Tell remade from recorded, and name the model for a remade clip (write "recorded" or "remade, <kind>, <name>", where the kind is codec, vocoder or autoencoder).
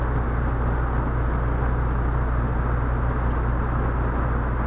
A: recorded